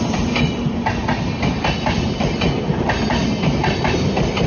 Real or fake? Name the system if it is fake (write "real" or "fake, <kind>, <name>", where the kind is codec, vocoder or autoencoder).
real